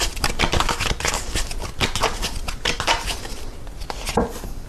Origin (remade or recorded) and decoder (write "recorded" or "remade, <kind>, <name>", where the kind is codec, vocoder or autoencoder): recorded